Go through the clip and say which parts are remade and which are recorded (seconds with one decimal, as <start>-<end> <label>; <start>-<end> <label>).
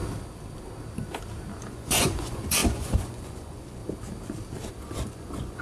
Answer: 0.0-1.7 recorded; 1.7-3.8 remade; 3.8-4.7 recorded; 4.7-5.6 remade